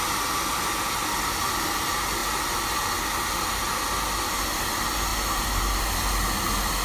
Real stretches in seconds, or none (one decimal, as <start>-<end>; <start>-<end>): 0.0-6.8

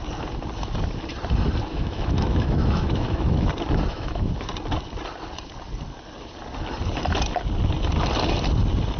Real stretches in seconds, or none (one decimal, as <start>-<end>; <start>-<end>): 0.0-1.7; 3.5-3.9; 4.5-9.0

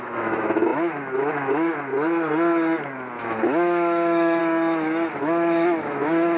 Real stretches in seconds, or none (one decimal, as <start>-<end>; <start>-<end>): 1.9-3.2; 4.4-5.2

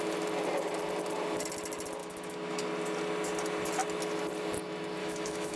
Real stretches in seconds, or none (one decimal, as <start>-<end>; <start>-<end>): 0.0-2.0; 2.6-5.0

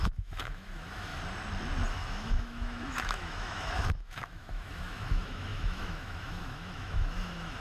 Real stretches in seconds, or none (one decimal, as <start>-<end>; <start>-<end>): 1.1-1.9

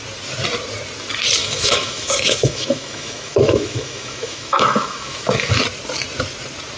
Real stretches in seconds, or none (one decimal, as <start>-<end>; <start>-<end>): 0.0-1.4; 5.5-6.8

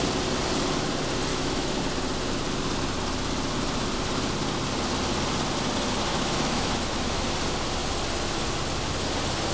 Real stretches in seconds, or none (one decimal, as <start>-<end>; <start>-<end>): 0.0-1.3; 1.8-6.1; 7.2-9.5

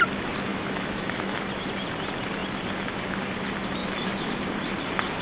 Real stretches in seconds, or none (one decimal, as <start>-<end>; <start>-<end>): 0.0-0.5; 1.4-3.8; 4.3-5.2